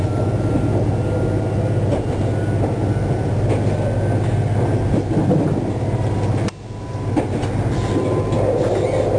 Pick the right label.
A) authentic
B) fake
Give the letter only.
A